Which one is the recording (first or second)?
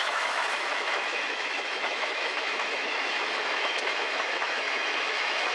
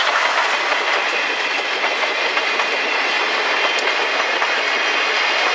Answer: second